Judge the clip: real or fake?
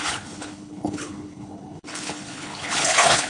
fake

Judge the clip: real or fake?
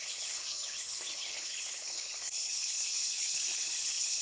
fake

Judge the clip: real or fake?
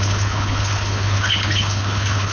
fake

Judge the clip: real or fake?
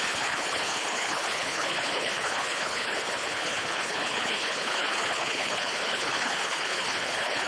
fake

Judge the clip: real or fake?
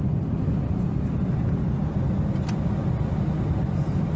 real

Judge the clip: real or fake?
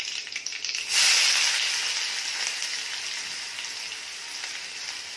real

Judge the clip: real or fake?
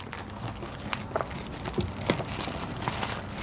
real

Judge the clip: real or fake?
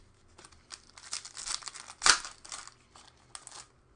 real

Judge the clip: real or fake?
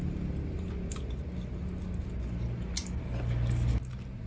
real